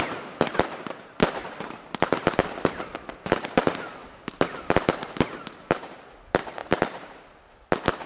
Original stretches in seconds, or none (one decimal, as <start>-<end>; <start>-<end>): 0.0-1.4; 3.4-4.0; 6.0-6.6; 7.2-8.1